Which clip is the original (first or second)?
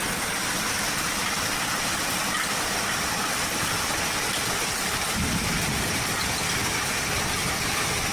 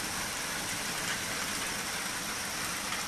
second